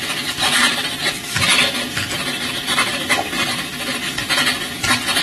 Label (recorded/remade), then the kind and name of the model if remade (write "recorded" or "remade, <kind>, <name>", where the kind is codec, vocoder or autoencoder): recorded